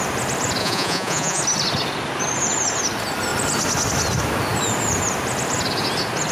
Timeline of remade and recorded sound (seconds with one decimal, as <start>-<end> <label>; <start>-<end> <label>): 0.0-0.6 recorded; 0.6-1.4 remade; 1.4-6.3 recorded